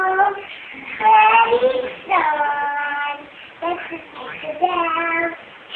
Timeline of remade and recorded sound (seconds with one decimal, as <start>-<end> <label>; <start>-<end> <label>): 0.0-5.8 recorded